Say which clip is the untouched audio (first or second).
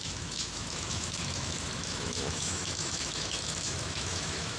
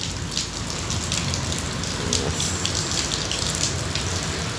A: second